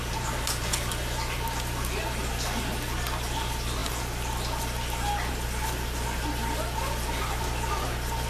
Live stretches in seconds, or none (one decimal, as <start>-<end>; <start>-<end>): 0.0-8.3